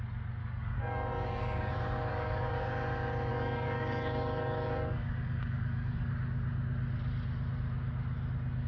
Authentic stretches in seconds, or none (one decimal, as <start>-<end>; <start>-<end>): 0.0-0.4; 1.7-2.1; 2.7-3.3; 6.1-8.7